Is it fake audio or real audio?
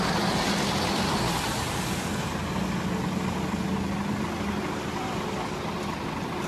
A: real